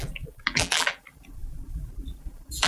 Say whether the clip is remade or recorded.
remade